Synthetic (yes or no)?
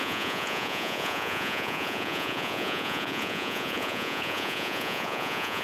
yes